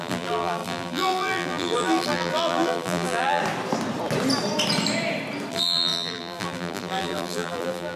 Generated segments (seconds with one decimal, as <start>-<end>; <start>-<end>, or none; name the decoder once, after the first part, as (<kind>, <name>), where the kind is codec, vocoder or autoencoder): 0.0-3.4 (vocoder, BigVGAN v2); 5.5-8.0